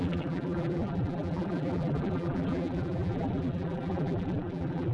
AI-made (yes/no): yes